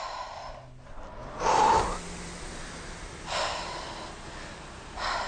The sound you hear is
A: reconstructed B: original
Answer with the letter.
B